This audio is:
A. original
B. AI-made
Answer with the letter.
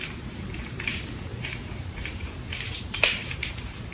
B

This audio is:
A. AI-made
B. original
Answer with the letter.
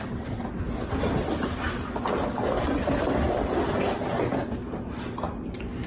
B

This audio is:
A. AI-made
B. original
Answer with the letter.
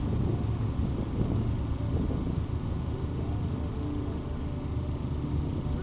B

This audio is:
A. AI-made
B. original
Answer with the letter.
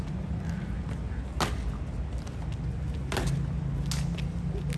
B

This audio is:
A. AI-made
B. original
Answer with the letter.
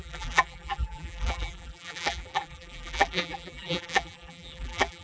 A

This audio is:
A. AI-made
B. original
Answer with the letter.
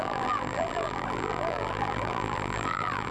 A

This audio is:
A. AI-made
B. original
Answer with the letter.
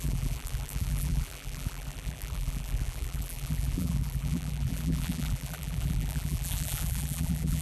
A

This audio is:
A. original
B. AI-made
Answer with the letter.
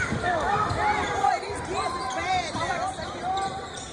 B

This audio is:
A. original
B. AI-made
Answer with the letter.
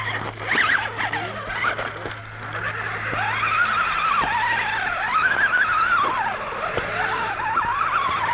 A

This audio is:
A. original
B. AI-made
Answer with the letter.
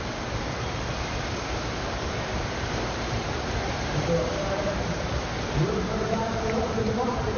B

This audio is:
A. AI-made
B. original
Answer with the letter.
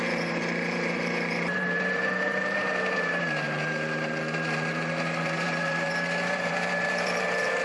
A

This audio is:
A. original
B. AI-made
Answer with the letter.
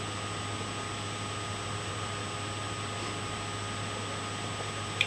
A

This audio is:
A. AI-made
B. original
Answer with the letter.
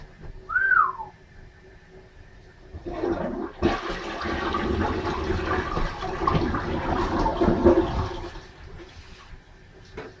B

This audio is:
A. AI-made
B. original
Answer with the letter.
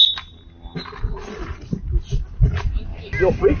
B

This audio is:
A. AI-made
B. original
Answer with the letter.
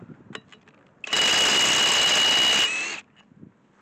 B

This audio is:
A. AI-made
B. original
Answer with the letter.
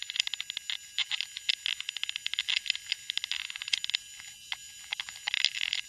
B